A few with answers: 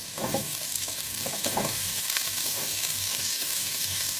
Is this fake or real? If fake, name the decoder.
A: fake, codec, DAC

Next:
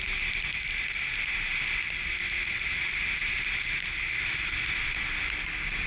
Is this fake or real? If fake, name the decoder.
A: real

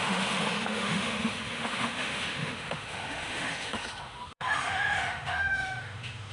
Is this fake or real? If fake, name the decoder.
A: fake, autoencoder, DAC-VAE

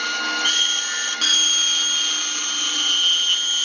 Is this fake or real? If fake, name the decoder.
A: real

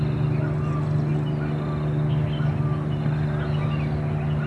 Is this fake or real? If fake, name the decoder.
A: real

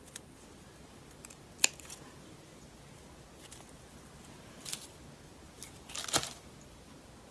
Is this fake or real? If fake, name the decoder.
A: real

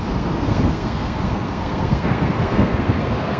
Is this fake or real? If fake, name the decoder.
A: fake, codec, SNAC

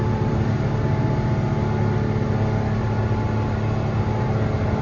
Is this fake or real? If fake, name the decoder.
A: real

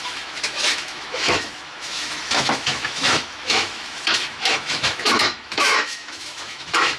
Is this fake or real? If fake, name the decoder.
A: fake, autoencoder, DAC-VAE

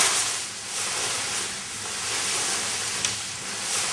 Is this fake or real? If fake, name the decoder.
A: real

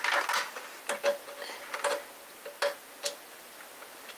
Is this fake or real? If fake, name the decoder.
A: real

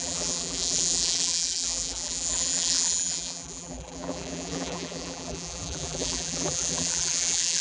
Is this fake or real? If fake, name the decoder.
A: fake, vocoder, BigVGAN v2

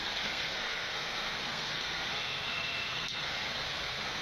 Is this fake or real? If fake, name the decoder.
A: fake, codec, SNAC